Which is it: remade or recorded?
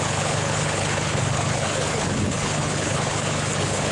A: remade